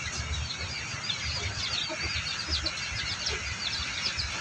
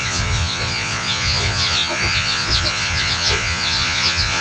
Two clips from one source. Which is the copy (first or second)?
second